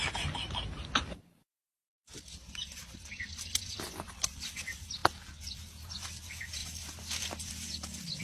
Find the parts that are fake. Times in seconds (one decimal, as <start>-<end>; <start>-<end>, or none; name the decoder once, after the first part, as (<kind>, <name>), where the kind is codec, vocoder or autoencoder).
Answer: none